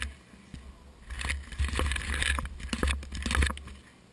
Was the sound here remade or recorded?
recorded